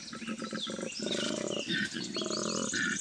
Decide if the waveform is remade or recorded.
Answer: recorded